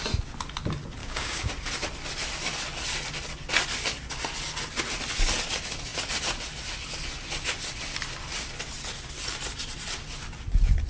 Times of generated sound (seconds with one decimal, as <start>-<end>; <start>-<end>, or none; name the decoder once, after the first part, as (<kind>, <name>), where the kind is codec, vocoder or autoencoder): 1.0-1.5 (codec, DAC)